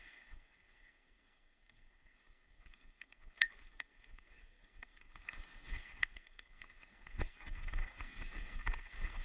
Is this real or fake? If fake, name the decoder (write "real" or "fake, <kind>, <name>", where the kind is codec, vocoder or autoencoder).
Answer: fake, codec, SNAC